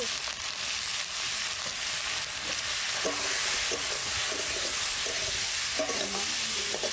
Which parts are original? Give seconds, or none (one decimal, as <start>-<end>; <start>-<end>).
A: 0.0-4.0; 4.7-6.9

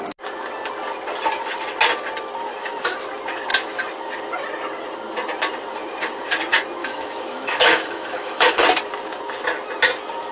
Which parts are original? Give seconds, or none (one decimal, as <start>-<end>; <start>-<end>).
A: 0.0-6.8; 8.5-10.3